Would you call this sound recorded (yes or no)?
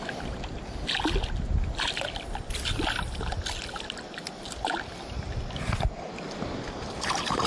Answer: yes